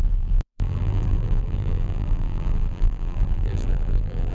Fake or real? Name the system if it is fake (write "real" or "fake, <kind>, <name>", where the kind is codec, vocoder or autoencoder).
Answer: fake, vocoder, BigVGAN v2